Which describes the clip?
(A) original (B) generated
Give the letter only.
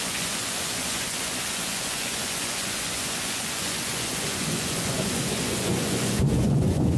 B